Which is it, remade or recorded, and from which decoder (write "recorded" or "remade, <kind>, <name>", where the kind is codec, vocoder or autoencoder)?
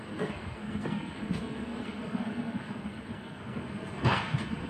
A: remade, codec, SNAC